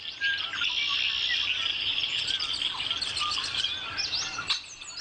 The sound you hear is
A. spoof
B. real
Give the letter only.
B